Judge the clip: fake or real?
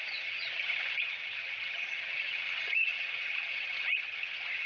fake